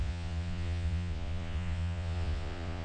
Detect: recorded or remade remade